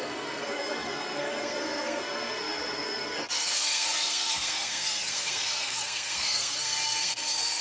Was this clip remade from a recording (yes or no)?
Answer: yes